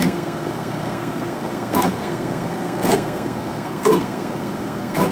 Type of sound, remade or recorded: remade